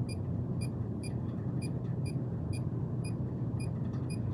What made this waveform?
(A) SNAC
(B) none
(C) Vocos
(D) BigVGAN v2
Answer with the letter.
D